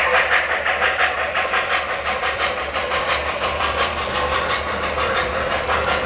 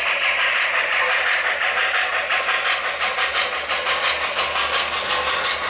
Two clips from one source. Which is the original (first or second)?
second